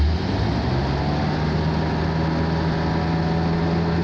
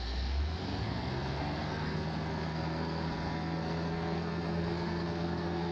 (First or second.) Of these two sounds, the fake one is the second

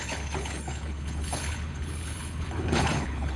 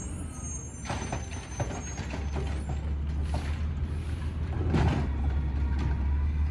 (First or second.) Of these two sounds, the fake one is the first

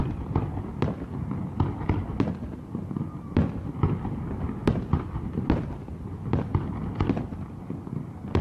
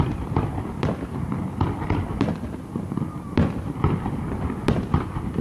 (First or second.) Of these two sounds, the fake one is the second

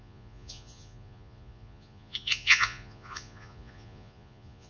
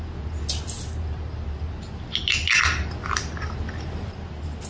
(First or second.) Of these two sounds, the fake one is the first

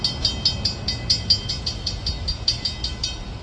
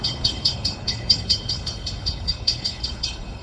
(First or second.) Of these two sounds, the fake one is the second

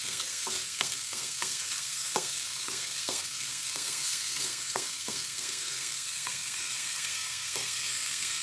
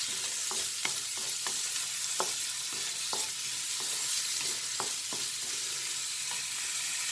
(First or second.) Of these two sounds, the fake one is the first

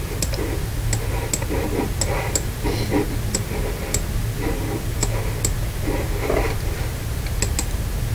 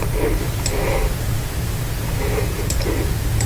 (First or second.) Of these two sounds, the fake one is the second